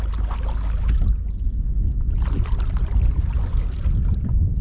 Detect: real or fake real